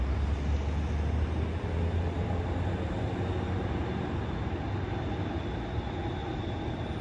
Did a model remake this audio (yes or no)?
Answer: no